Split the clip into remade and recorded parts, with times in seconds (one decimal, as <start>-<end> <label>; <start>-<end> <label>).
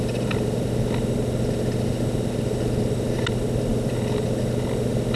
0.0-5.2 recorded